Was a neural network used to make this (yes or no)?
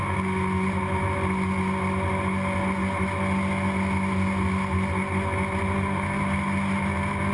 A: no